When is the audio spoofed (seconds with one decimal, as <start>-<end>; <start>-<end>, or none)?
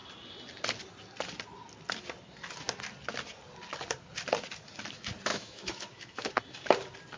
5.3-6.3